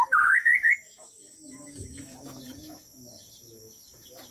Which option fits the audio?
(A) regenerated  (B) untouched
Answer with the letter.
A